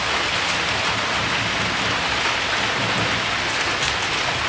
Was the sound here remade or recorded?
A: recorded